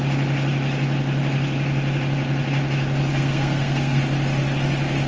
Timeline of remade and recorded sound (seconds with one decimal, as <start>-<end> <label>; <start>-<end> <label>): 0.0-3.1 recorded; 3.1-4.0 remade; 4.0-5.1 recorded